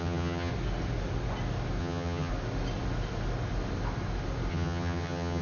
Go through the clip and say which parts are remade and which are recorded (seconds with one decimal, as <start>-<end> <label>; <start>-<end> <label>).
0.0-0.5 remade; 0.5-1.8 recorded; 1.8-2.3 remade; 2.3-4.5 recorded; 4.5-5.4 remade